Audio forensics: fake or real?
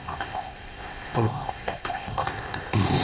fake